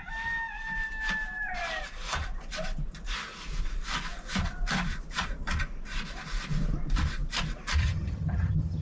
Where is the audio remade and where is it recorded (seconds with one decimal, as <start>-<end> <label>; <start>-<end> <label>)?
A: 0.0-7.8 recorded; 7.8-8.8 remade